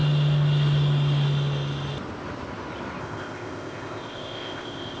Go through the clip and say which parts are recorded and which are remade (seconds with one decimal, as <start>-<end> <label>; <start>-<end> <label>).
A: 0.0-3.0 recorded; 3.0-5.0 remade